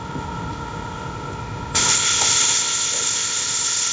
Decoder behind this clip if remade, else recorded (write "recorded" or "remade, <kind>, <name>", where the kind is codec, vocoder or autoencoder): remade, codec, ZipCodec